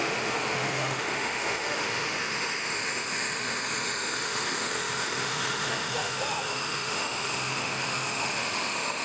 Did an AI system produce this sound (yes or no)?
yes